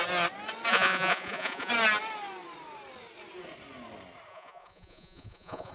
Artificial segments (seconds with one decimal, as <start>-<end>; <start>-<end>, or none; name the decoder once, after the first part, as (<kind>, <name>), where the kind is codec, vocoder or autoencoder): 0.7-1.7 (vocoder, Vocos); 4.3-5.7